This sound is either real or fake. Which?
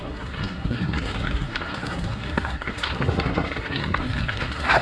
fake